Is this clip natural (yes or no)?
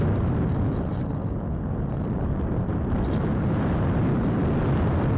yes